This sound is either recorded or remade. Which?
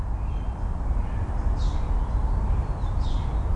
recorded